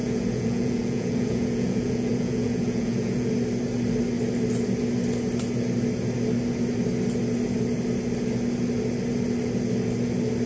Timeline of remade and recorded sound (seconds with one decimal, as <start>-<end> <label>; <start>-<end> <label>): 0.0-3.3 remade; 3.3-10.5 recorded